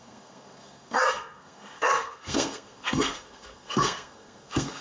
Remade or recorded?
remade